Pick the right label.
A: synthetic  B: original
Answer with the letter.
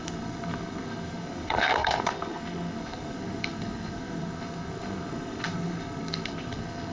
A